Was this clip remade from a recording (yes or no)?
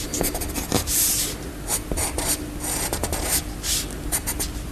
no